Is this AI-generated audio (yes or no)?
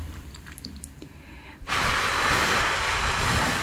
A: yes